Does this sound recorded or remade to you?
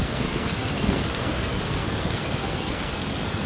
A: remade